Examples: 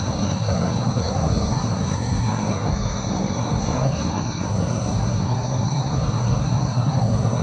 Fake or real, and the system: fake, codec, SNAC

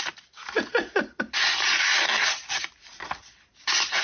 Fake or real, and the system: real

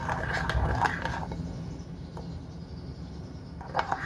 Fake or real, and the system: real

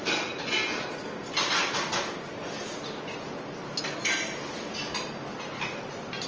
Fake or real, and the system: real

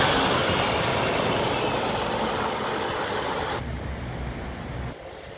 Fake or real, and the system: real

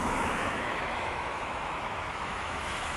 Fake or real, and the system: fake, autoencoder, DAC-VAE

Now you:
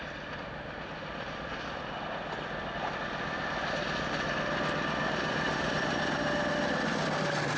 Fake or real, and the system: real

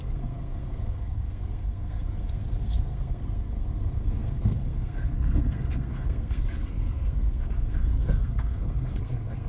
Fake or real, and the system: fake, codec, SNAC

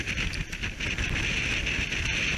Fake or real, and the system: real